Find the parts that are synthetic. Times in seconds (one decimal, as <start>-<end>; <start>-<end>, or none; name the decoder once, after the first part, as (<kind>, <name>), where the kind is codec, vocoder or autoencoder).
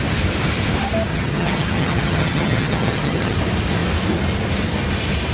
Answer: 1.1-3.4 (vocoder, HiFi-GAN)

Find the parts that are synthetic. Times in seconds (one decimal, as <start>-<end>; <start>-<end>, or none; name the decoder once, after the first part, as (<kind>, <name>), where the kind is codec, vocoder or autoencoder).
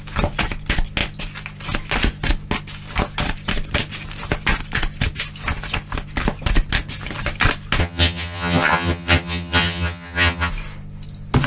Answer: 7.8-10.5 (vocoder, HiFi-GAN)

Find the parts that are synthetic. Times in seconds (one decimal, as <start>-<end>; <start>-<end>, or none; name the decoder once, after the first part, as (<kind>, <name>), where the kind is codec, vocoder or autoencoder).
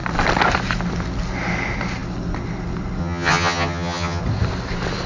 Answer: 3.0-4.2 (vocoder, HiFi-GAN)